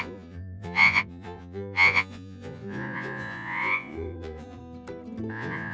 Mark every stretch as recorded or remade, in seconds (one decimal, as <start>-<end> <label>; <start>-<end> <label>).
0.0-4.6 remade; 4.6-5.3 recorded; 5.3-5.7 remade